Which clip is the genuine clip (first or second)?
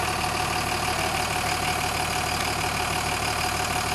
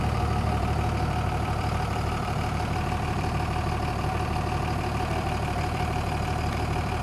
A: first